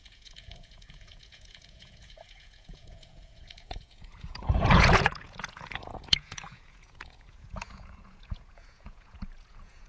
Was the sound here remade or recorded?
remade